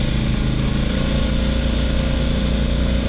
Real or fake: real